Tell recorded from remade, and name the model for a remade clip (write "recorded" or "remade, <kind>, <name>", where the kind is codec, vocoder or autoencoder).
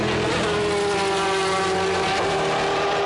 recorded